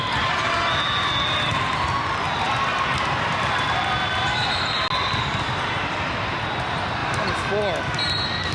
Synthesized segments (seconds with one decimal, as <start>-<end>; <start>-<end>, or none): none